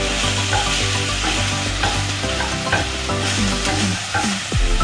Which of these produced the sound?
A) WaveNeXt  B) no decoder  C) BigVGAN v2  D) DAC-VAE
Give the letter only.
B